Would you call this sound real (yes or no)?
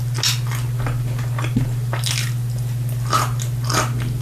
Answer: yes